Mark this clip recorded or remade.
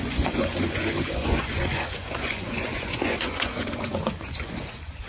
remade